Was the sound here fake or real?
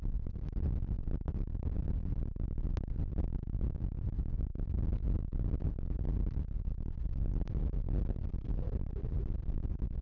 real